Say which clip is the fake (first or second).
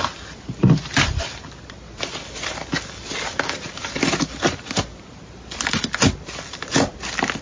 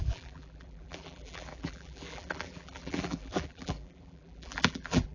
second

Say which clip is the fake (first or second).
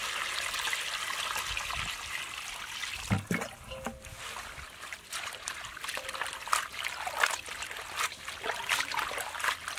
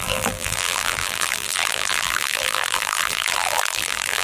second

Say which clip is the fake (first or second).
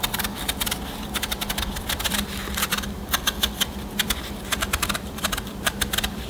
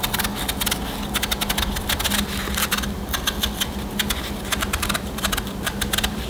first